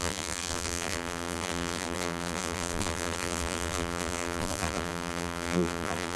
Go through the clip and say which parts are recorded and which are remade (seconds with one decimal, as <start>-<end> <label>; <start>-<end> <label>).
0.0-6.2 remade